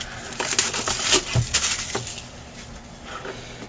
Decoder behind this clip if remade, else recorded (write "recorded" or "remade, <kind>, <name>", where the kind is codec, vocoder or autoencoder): recorded